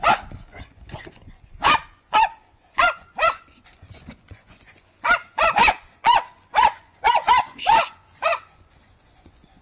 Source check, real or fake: fake